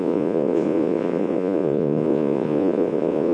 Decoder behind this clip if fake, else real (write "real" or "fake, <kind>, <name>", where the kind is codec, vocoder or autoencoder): fake, vocoder, Vocos